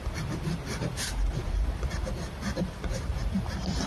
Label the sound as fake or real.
fake